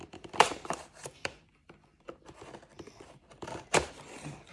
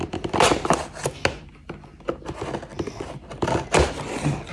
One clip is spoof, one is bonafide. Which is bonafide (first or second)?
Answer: second